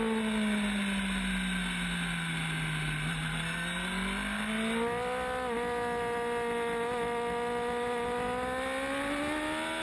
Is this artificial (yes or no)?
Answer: no